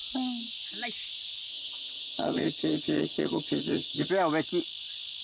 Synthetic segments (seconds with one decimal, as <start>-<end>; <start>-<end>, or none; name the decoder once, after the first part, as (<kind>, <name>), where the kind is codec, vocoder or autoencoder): 1.5-4.1 (vocoder, HiFi-GAN)